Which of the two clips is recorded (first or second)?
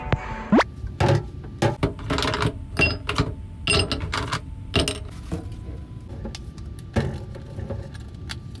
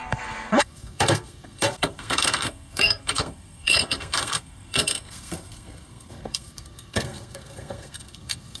first